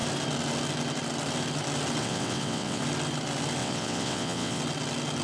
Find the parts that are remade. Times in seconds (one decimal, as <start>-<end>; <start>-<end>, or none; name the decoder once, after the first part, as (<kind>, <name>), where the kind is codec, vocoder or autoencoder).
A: 2.0-2.8 (vocoder, WaveNeXt); 3.6-4.6